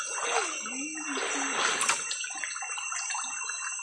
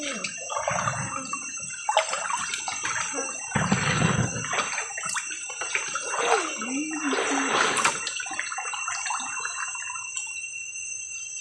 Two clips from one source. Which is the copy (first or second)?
second